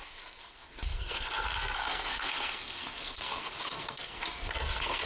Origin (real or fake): fake